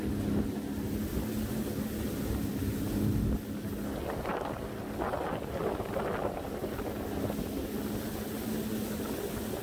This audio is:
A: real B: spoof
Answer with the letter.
A